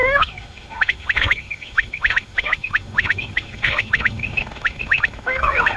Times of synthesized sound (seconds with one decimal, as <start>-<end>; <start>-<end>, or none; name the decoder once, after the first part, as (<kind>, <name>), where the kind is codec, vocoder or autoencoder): 0.0-5.8 (autoencoder, DAC-VAE)